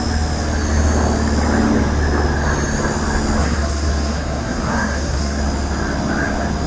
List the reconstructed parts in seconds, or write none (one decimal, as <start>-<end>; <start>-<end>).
3.4-5.4